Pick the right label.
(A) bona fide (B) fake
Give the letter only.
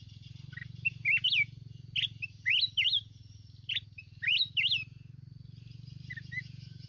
A